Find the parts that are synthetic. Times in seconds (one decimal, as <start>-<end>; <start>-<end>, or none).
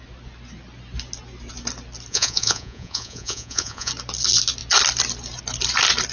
2.1-3.9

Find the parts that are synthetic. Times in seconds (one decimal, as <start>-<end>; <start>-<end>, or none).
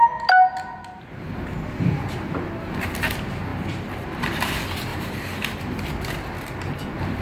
3.5-4.5; 4.9-5.8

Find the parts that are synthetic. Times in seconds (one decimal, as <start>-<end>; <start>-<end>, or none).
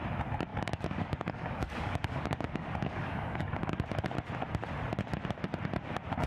0.5-3.8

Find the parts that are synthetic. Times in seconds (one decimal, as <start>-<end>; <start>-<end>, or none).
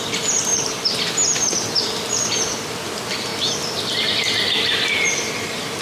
0.0-3.3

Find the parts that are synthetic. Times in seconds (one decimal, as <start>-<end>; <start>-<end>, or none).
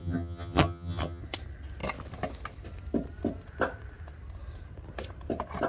0.0-1.2